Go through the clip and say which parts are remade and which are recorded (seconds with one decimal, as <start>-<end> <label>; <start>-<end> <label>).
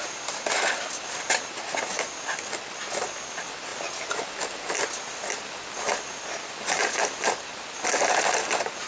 0.0-8.9 recorded